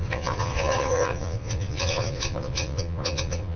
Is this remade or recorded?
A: remade